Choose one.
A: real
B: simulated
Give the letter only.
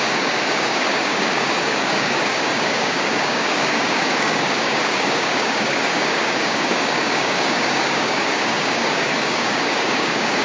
B